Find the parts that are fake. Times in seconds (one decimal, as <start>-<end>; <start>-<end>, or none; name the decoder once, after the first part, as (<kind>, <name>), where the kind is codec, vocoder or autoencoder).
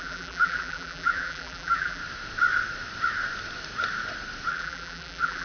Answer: 0.0-2.0 (vocoder, BigVGAN v2); 4.5-5.4